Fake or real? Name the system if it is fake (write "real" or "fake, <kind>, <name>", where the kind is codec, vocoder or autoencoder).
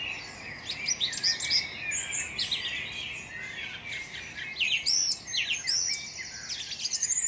real